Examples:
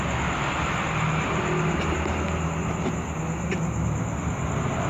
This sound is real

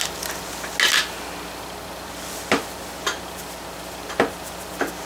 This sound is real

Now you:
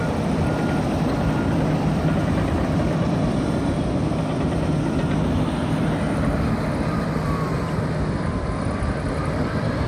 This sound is fake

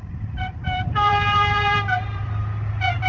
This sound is fake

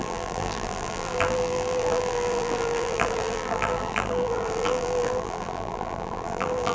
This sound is fake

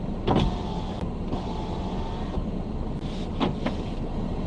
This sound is real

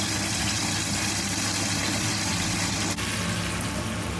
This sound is real